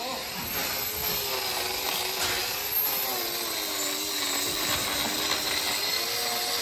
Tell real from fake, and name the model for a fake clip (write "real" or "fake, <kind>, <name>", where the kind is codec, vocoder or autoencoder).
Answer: real